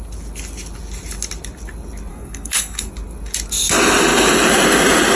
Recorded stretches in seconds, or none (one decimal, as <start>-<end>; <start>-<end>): 0.0-2.1; 2.9-5.2

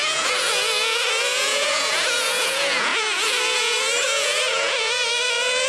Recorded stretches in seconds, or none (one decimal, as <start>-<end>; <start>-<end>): none

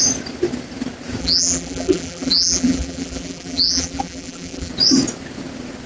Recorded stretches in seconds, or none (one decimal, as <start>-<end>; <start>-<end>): 0.0-1.2; 4.7-5.9